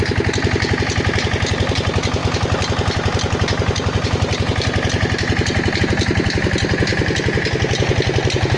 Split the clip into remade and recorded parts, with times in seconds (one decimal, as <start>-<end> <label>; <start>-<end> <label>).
0.0-8.6 recorded